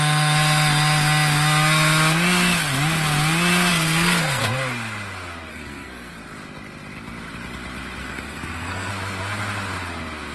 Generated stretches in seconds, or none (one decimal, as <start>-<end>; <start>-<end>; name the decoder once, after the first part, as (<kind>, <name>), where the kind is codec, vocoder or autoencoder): 3.7-4.4 (codec, SNAC); 5.5-6.2; 8.0-8.9